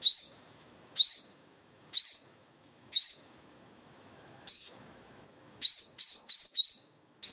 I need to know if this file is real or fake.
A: fake